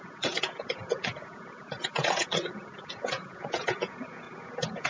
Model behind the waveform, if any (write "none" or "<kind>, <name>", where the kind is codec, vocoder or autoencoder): vocoder, Vocos